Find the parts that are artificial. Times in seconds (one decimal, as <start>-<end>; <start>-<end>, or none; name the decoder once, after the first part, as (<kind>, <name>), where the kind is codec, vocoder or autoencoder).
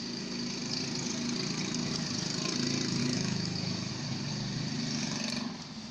3.0-3.9 (autoencoder, DAC-VAE)